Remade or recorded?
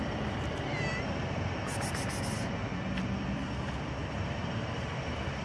recorded